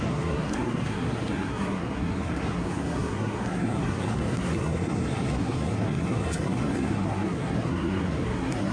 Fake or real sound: fake